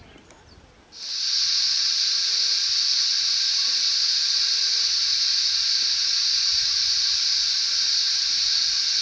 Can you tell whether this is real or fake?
real